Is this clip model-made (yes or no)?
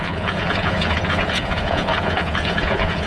yes